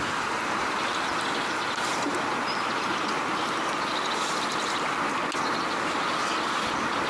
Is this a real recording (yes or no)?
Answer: yes